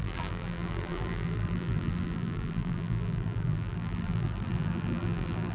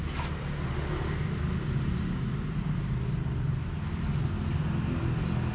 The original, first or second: second